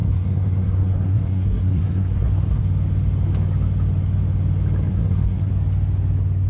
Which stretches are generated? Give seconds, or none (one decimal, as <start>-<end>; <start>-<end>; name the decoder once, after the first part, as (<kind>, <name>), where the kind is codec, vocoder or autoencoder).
0.0-2.6 (codec, SNAC); 4.9-5.5